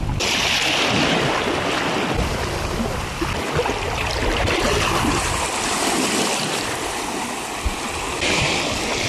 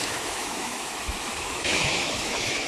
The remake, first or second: second